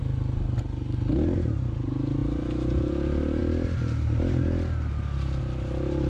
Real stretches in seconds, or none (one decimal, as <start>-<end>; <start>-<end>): 0.0-6.1